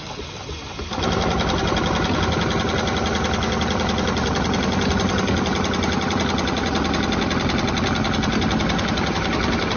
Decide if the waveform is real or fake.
real